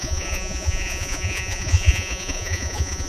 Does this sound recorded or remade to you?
remade